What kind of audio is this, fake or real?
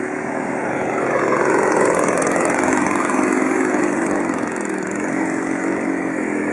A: fake